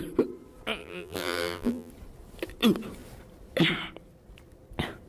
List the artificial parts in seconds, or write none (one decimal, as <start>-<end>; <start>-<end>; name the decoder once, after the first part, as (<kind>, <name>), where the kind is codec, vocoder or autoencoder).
0.8-1.9 (vocoder, BigVGAN v2)